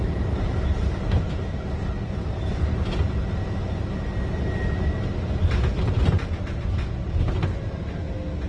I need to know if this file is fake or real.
real